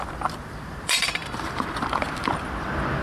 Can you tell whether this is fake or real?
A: fake